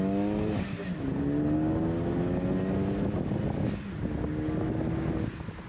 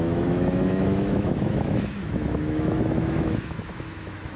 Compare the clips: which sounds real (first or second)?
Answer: first